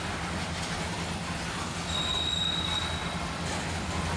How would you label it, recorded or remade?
recorded